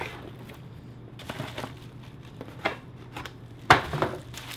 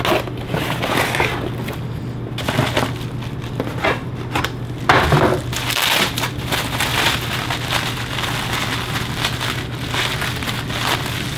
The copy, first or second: first